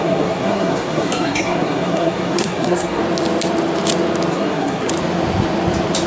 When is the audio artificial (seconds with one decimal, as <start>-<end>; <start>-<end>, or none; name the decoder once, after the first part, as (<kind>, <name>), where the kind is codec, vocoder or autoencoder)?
0.0-3.0 (codec, SNAC); 4.3-4.9